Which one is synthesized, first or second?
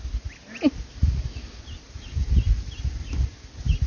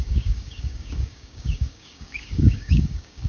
second